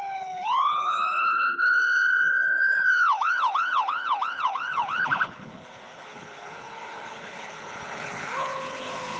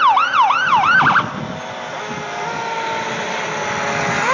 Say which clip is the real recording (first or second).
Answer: second